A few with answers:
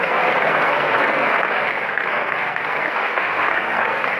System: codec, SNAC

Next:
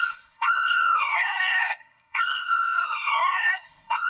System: codec, SNAC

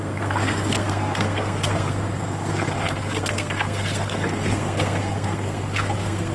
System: codec, SNAC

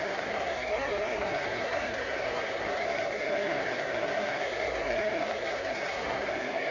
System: codec, SNAC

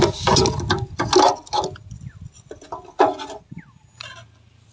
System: none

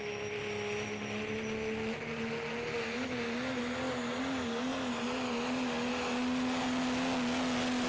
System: none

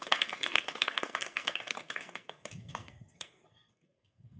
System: codec, SNAC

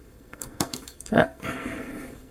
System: codec, SNAC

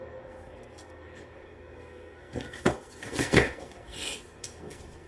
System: codec, SNAC